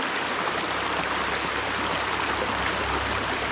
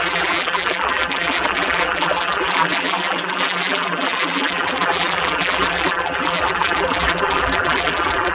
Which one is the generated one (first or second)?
second